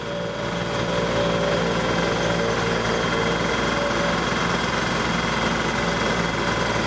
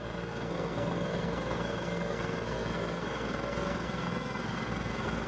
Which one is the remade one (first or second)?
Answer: second